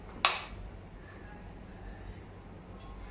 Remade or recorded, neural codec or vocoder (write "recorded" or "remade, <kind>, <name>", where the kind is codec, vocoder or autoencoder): recorded